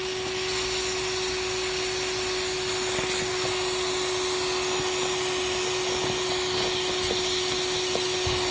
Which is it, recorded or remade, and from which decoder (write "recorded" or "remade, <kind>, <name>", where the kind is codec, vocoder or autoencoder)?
recorded